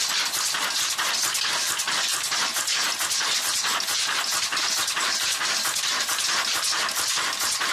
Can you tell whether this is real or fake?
real